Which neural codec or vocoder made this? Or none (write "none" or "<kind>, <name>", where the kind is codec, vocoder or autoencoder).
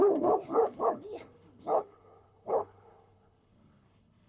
codec, HILCodec